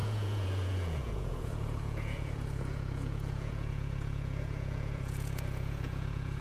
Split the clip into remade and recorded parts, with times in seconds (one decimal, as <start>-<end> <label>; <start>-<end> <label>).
0.0-6.4 remade